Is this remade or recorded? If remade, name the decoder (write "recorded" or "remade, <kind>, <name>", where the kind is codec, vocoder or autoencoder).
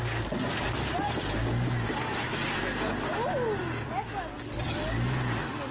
recorded